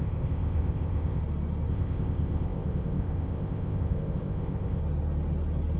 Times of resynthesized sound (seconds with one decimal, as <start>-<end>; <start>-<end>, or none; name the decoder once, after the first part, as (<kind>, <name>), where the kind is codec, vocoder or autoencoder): 0.0-1.2 (codec, ZipCodec); 1.7-4.8